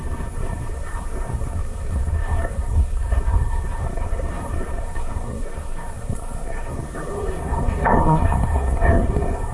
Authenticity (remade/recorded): remade